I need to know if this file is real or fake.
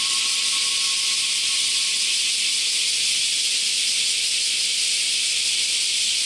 real